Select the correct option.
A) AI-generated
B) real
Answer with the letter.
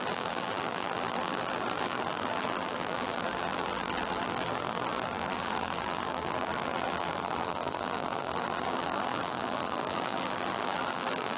A